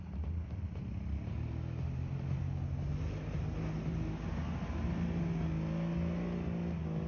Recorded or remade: recorded